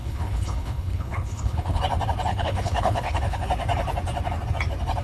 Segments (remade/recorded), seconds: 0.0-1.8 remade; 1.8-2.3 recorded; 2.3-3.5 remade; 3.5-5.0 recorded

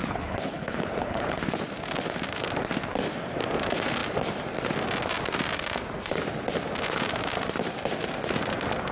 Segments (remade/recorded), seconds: 0.0-1.4 remade; 1.4-8.9 recorded

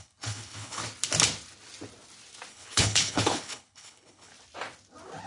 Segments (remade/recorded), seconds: 0.0-0.8 remade; 0.8-2.5 recorded; 2.5-4.3 remade; 4.3-5.3 recorded

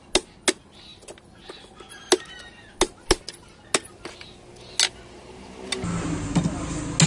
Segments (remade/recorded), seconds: 0.0-7.1 recorded

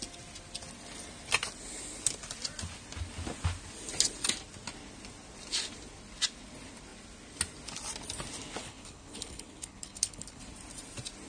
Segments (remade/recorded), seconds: 0.0-8.6 recorded; 8.6-10.4 remade; 10.4-11.3 recorded

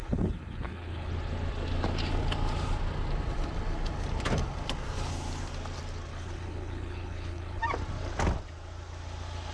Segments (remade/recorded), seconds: 0.0-1.1 remade; 1.1-6.1 recorded; 6.1-7.6 remade; 7.6-9.5 recorded

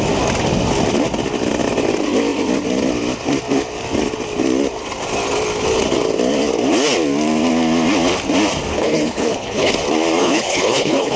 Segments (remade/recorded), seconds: 0.0-8.7 recorded; 8.7-9.7 remade; 9.7-10.2 recorded; 10.2-11.2 remade